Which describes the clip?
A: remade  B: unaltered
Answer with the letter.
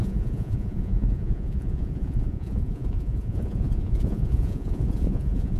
A